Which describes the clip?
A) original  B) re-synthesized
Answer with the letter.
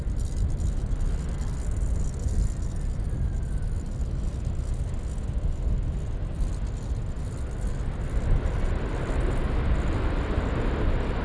A